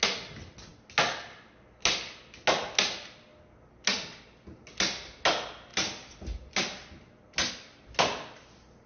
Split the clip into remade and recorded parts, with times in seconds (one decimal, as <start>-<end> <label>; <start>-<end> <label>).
0.0-8.9 recorded